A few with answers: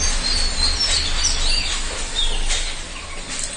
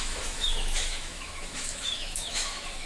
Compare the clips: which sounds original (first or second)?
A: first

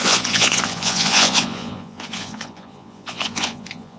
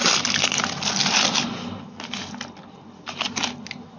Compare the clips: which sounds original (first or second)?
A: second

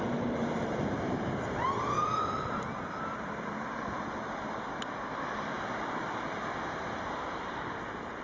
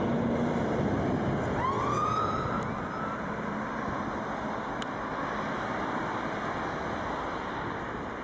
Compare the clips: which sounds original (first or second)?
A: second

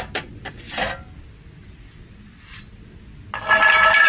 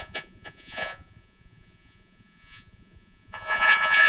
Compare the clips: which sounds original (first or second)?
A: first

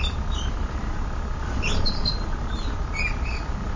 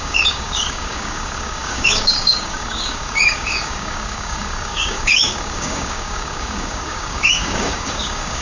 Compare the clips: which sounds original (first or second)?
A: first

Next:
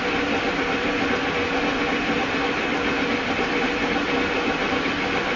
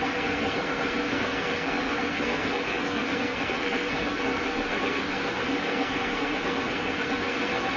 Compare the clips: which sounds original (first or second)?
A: first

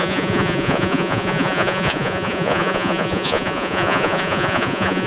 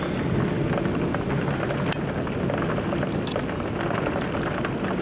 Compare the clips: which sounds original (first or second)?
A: second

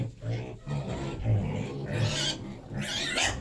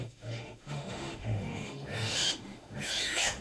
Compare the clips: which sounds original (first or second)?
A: first